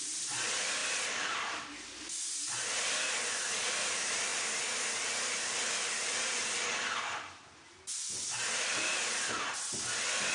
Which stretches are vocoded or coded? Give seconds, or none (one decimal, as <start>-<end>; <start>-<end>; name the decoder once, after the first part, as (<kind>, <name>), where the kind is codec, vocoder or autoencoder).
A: none